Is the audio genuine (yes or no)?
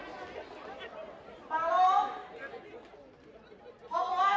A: yes